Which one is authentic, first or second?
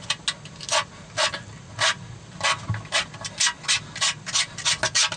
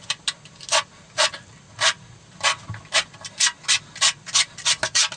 first